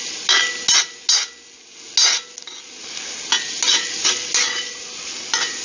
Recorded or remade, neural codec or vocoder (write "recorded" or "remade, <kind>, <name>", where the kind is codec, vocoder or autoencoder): recorded